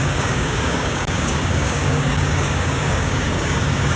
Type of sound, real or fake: fake